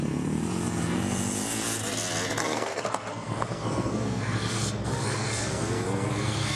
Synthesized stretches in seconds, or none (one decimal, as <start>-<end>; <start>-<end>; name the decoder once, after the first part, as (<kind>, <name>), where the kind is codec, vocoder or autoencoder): 2.4-6.6 (codec, SNAC)